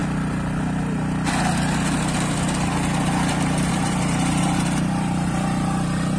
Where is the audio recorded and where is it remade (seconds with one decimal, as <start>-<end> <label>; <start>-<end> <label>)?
0.0-3.7 recorded; 3.7-6.2 remade